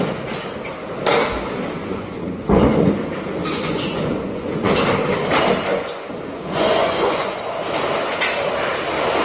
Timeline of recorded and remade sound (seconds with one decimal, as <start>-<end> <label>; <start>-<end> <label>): 0.0-1.8 recorded; 1.8-2.9 remade; 2.9-3.4 recorded; 3.4-4.7 remade; 4.7-5.7 recorded; 5.7-7.4 remade; 7.4-9.2 recorded